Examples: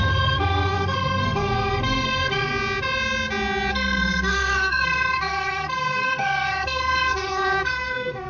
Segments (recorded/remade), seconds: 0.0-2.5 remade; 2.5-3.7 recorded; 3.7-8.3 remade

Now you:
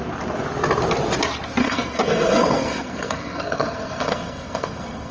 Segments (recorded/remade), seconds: 0.0-1.6 recorded; 1.6-5.1 remade

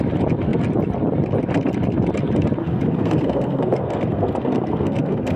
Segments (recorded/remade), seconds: 0.0-2.6 recorded; 2.6-5.4 remade

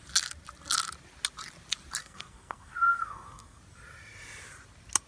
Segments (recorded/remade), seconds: 0.0-2.0 recorded; 2.0-3.6 remade; 3.6-5.1 recorded

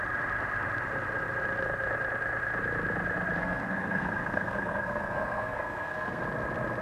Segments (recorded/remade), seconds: 0.0-3.4 recorded; 3.4-6.2 remade; 6.2-6.8 recorded

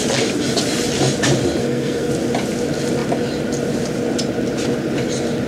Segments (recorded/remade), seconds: 0.0-1.6 recorded; 1.6-2.1 remade; 2.1-5.5 recorded